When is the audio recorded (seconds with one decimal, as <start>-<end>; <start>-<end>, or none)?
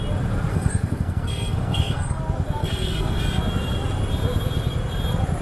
0.0-0.5; 2.2-2.6; 3.2-5.4